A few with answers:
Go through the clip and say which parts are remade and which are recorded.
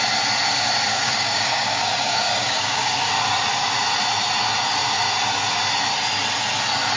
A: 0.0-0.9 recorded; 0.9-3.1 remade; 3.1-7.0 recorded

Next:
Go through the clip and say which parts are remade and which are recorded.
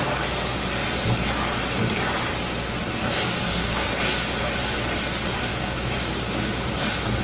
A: 0.0-3.0 recorded; 3.0-3.9 remade; 3.9-5.5 recorded; 5.5-6.4 remade; 6.4-7.2 recorded